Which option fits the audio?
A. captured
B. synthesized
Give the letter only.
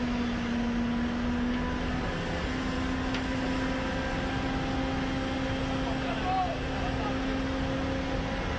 A